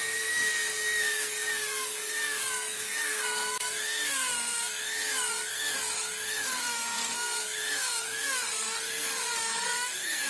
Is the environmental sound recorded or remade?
remade